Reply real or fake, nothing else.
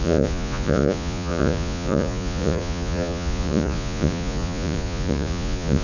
fake